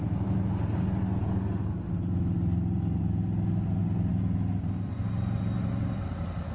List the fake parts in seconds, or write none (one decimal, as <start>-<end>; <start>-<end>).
none